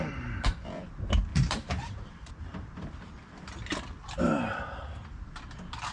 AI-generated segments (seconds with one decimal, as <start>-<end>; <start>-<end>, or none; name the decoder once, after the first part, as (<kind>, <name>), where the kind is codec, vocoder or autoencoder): 1.3-2.3 (vocoder, BigVGAN v2)